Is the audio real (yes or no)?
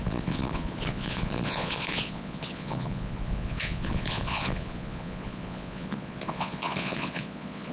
no